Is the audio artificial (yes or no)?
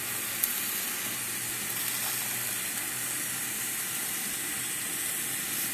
no